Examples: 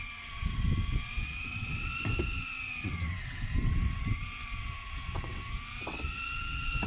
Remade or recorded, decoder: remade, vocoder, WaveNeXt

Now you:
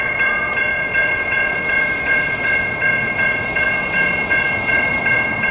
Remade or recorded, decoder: remade, vocoder, WaveNeXt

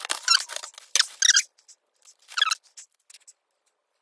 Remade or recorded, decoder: recorded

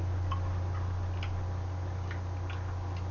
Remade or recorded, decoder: recorded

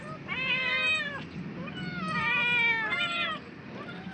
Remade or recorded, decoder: recorded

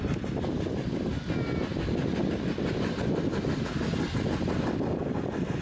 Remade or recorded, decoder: recorded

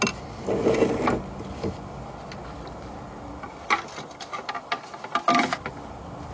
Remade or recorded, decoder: recorded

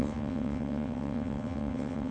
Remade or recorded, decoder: remade, vocoder, WaveNeXt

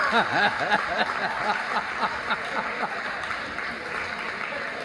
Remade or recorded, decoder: recorded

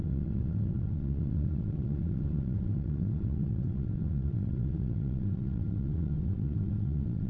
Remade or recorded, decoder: remade, vocoder, WaveNeXt